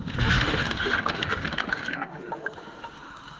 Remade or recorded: remade